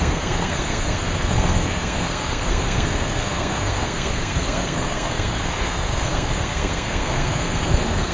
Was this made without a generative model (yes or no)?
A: no